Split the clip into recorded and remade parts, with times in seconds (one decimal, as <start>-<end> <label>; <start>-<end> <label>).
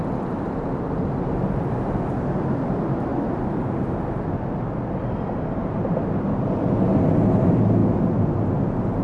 0.0-9.0 recorded